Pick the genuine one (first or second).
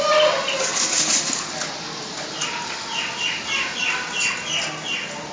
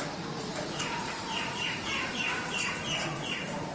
first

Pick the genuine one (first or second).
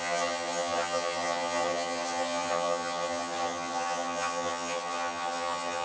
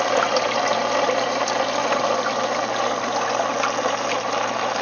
second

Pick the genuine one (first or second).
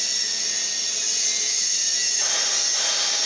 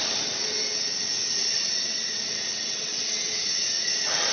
first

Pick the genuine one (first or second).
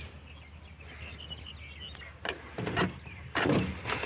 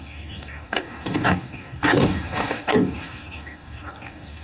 first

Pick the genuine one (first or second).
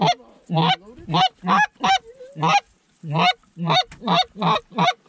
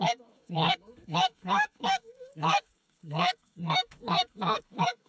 first